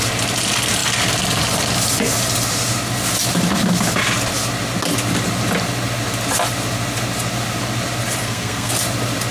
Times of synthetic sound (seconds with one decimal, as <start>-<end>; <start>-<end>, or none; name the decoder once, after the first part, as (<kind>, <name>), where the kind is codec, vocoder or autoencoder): 8.2-8.7 (codec, SNAC)